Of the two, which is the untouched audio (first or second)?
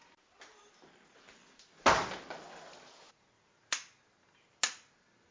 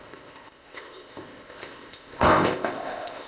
first